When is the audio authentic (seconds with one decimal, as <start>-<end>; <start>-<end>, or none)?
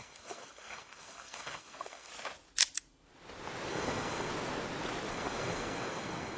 2.1-3.7; 4.3-5.1